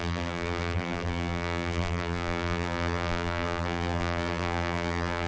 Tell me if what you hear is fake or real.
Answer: fake